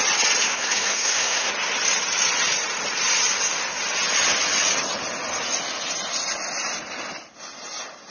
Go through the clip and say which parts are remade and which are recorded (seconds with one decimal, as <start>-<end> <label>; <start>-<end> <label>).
0.0-0.4 recorded; 0.4-1.5 remade; 1.5-8.1 recorded